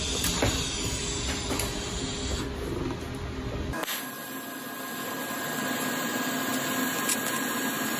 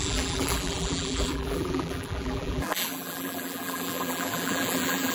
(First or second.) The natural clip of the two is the first